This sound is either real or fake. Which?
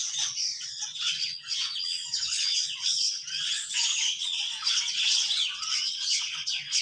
fake